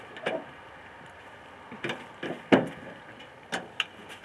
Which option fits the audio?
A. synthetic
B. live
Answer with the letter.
B